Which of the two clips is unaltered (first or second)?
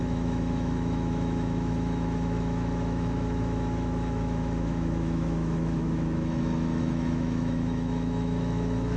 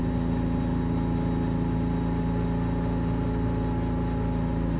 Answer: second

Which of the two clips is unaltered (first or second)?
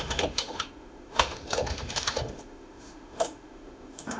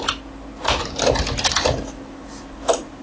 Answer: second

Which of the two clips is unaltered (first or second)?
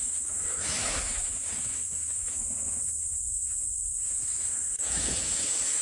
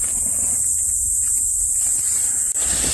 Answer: second